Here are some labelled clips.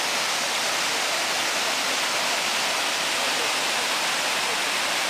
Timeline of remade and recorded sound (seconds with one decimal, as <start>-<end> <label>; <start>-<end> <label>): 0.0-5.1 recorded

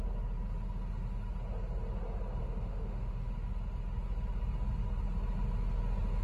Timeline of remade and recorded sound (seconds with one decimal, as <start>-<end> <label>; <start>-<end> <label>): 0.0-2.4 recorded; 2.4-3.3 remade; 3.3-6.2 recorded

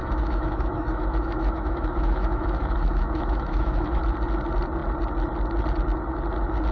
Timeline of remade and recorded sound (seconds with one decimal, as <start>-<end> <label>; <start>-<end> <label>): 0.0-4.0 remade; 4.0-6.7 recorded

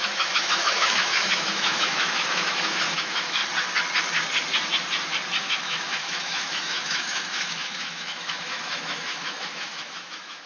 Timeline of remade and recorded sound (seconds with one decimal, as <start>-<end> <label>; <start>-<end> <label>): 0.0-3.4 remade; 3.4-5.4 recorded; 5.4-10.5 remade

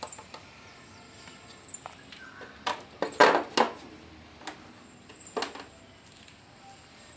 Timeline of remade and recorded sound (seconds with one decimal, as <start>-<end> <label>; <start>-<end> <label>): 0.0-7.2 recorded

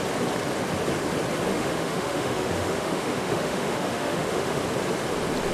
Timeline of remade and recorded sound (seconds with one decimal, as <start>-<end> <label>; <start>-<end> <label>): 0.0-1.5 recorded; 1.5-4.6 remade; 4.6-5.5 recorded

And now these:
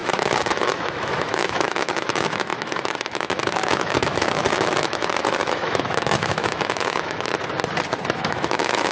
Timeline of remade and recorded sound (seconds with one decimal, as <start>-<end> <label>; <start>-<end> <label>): 0.0-7.3 remade; 7.3-8.1 recorded; 8.1-8.9 remade

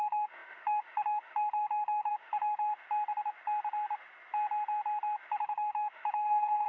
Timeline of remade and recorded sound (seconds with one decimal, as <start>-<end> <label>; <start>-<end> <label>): 0.0-2.7 remade; 2.7-5.3 recorded; 5.3-6.7 remade